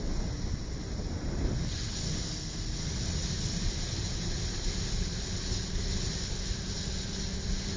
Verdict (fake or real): real